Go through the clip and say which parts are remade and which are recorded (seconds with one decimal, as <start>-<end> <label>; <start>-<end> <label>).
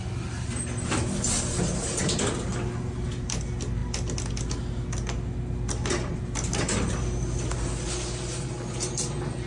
0.0-9.5 recorded